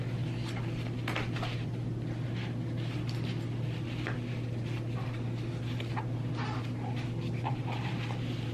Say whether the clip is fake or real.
real